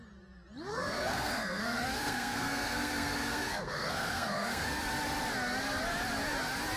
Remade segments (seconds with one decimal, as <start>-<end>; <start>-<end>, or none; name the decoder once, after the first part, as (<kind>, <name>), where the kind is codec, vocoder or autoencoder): 0.7-4.8 (codec, SNAC)